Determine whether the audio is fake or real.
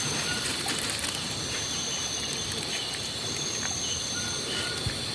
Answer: fake